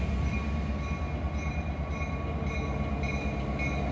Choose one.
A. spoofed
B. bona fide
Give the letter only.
B